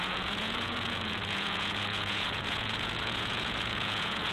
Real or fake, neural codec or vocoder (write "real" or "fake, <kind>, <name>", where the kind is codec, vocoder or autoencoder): fake, vocoder, Vocos